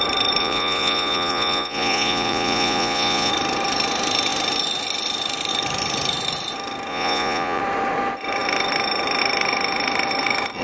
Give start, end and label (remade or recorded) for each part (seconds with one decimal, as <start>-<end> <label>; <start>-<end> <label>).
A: 0.0-0.4 recorded; 0.4-3.3 remade; 3.3-6.9 recorded; 6.9-7.6 remade; 7.6-10.6 recorded